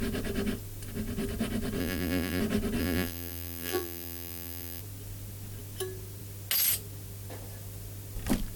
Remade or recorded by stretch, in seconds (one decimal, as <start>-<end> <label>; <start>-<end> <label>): 0.0-1.8 recorded; 1.8-2.4 remade; 2.4-2.8 recorded; 2.8-4.8 remade; 4.8-8.6 recorded